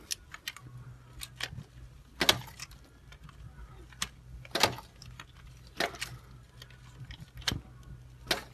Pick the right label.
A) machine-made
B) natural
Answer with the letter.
B